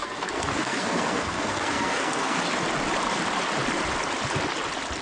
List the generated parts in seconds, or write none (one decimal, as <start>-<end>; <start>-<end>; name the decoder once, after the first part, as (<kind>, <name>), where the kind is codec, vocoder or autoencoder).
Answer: 0.0-2.4 (codec, SNAC)